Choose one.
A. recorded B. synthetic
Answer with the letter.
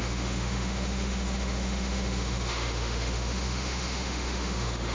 B